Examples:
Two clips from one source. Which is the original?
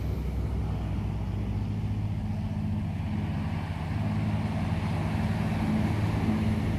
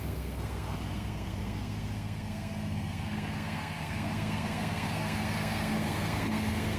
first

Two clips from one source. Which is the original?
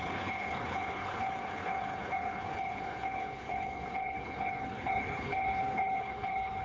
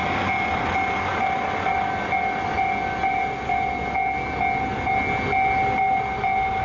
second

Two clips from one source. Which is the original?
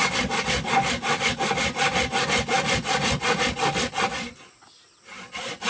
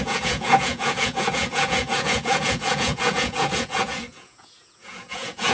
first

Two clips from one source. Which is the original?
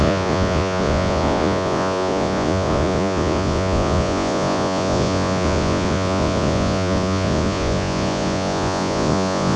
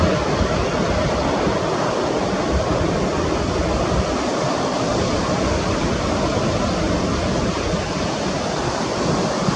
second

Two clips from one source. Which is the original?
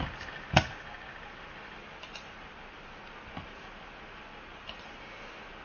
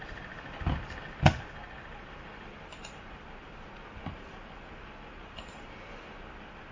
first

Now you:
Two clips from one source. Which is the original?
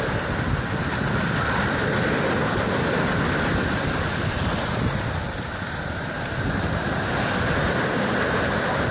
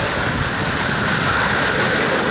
first